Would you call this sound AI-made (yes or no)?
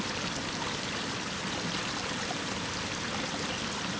no